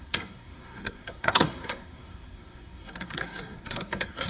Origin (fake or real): fake